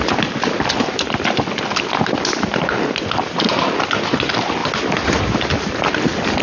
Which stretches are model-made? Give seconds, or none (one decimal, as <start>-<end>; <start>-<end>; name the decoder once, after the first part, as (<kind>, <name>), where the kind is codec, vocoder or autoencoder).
none